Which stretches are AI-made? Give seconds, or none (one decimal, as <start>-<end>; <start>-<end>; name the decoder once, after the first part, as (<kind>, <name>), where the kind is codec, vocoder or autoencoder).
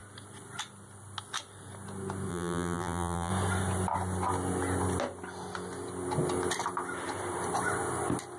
2.3-3.3 (vocoder, BigVGAN v2)